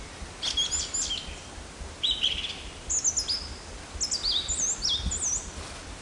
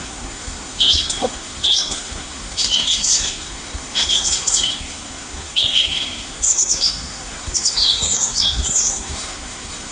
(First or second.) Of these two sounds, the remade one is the second